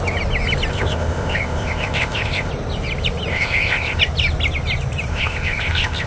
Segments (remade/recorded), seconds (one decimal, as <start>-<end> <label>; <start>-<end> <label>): 0.0-0.7 recorded; 0.7-2.5 remade; 2.5-3.3 recorded; 3.3-4.0 remade; 4.0-5.1 recorded; 5.1-6.1 remade

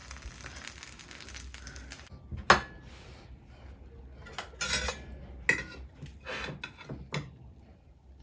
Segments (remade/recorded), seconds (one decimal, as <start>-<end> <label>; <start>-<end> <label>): 0.0-8.2 recorded

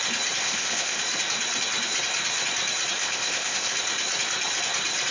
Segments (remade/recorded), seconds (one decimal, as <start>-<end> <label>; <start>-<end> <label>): 0.0-0.4 recorded; 0.4-1.0 remade; 1.0-3.0 recorded; 3.0-3.7 remade; 3.7-5.1 recorded

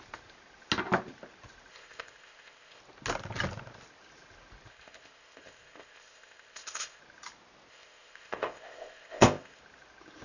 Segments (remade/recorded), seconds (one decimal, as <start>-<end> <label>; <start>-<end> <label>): 0.0-1.7 recorded; 1.7-2.8 remade; 2.8-4.7 recorded; 4.7-7.0 remade; 7.0-7.7 recorded; 7.7-9.6 remade; 9.6-10.2 recorded

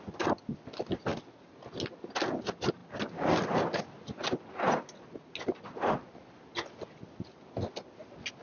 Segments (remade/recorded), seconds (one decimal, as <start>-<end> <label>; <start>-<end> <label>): 0.0-8.4 recorded